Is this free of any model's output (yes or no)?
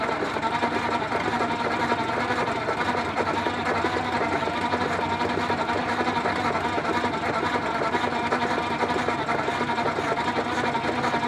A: yes